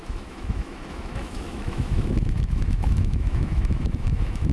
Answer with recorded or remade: remade